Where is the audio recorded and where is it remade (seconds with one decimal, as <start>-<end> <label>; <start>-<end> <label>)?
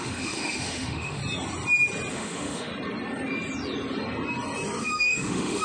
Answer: 0.0-1.2 remade; 1.2-2.1 recorded; 2.1-2.7 remade; 2.7-4.8 recorded; 4.8-5.6 remade